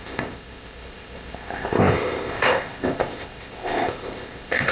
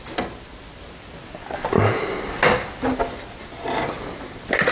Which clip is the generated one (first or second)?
first